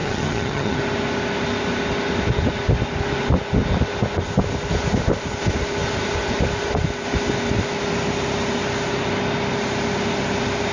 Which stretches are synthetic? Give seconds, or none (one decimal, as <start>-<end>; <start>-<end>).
0.0-0.8